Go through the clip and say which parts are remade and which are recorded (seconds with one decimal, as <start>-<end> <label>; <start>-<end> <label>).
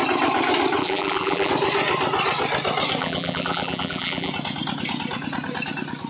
0.0-0.8 recorded; 0.8-1.5 remade; 1.5-3.0 recorded; 3.0-4.3 remade; 4.3-6.1 recorded